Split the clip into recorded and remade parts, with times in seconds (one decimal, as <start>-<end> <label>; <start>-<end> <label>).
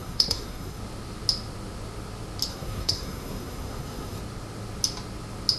0.0-0.8 remade; 0.8-2.5 recorded; 2.5-4.2 remade; 4.2-5.6 recorded